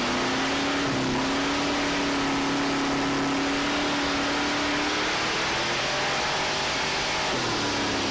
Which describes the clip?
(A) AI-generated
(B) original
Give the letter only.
B